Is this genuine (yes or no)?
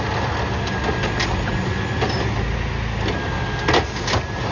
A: yes